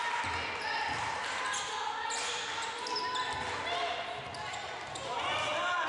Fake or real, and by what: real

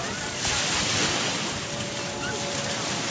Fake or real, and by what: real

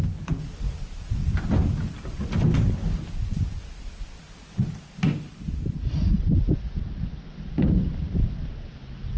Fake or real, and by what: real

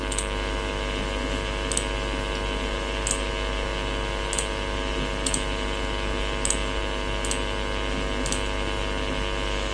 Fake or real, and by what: real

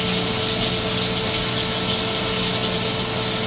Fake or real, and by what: real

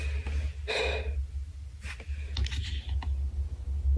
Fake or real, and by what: real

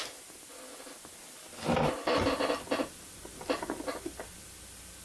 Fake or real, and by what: fake, vocoder, BigVGAN v2